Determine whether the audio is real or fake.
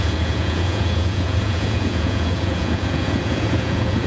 fake